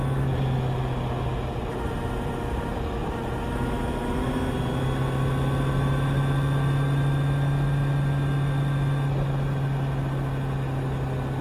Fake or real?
real